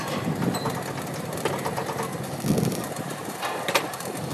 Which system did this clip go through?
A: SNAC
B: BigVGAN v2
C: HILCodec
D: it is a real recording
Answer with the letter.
B